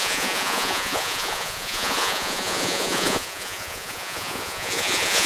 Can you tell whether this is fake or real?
fake